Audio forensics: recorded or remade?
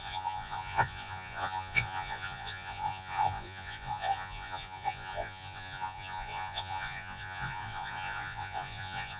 remade